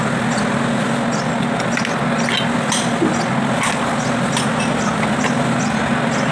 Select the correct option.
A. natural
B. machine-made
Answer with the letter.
A